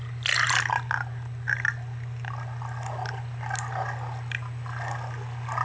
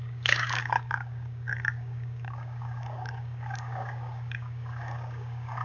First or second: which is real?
first